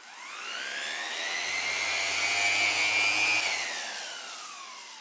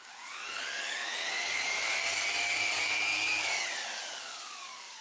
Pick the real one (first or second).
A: first